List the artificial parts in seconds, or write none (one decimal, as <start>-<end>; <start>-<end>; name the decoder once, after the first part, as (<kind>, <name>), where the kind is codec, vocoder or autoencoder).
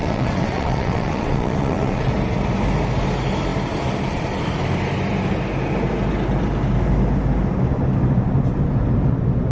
0.0-2.1 (vocoder, WaveNeXt)